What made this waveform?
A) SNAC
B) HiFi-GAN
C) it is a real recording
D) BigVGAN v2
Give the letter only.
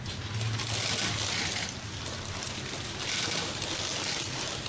C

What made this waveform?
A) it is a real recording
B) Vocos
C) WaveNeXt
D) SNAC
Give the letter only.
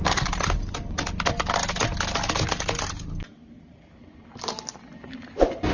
A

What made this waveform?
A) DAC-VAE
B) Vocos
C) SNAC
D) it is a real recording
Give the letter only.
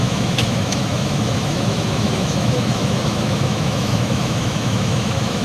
A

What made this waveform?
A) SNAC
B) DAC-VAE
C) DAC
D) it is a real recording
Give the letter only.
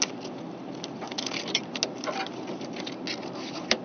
D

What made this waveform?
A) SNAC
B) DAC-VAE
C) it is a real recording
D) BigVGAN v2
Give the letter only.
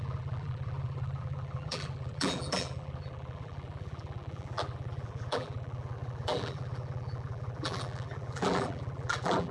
D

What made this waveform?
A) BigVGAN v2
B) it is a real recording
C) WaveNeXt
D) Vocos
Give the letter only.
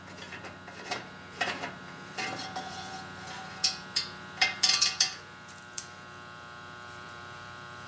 A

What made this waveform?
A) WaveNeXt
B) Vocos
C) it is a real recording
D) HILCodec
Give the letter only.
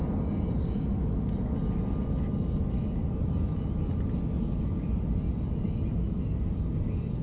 C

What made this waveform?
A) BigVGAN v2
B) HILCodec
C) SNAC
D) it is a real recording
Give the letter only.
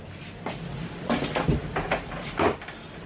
D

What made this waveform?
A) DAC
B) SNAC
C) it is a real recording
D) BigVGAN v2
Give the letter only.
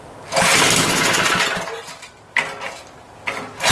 C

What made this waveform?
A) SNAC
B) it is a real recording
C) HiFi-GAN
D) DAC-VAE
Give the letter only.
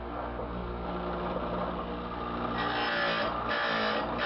B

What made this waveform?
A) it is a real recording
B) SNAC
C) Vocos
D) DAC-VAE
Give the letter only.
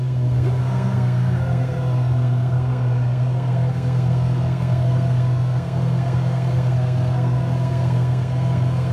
B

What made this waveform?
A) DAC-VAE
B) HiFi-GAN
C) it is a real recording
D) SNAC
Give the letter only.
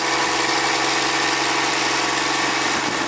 C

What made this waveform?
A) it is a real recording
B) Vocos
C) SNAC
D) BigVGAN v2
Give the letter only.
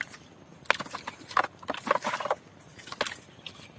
A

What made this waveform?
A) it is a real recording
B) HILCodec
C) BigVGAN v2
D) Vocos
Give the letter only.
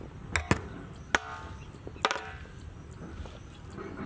A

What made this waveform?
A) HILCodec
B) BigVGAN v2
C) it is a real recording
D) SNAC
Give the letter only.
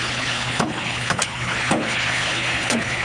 A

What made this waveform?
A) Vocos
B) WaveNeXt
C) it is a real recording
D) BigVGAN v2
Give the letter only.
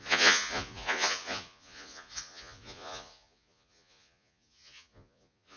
A